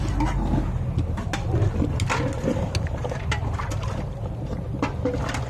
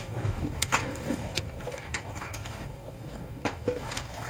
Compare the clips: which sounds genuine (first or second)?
first